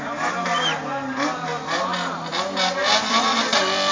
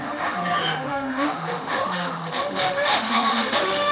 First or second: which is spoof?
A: second